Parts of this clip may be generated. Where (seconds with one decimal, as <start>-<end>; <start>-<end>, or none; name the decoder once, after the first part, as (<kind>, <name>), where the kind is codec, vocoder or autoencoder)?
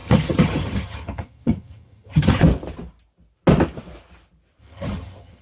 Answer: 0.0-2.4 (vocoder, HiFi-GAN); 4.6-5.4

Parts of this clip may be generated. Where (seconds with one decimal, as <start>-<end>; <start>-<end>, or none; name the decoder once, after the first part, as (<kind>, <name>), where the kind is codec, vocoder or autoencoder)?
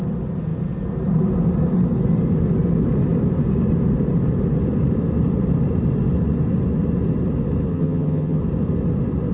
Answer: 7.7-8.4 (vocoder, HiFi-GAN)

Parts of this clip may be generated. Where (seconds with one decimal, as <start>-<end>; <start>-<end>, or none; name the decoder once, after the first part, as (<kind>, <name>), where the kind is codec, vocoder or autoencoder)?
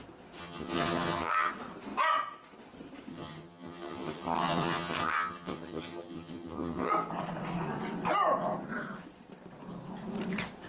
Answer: 0.4-1.5 (vocoder, HiFi-GAN); 3.1-6.9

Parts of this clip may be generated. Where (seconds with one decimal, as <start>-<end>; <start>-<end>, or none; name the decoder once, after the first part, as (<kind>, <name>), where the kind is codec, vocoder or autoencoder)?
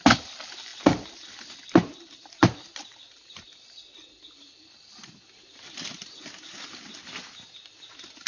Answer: none